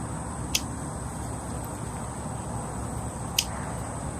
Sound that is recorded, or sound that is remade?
recorded